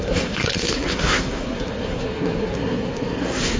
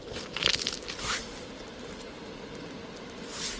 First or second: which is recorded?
second